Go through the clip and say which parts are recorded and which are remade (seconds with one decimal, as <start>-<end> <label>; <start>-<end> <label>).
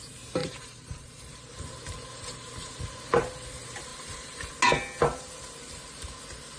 0.0-0.4 recorded; 0.4-1.5 remade; 1.5-3.9 recorded; 3.9-4.5 remade; 4.5-6.6 recorded